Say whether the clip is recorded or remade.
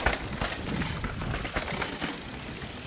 recorded